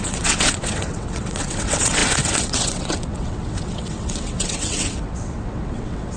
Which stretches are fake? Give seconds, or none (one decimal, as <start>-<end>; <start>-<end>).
0.0-6.2